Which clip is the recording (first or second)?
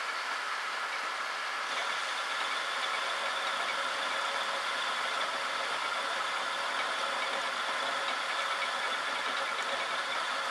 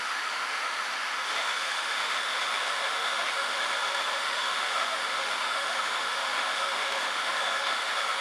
first